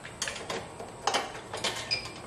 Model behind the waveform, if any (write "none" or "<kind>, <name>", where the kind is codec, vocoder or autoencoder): none